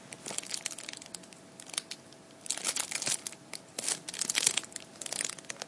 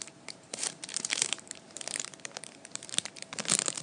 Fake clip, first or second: second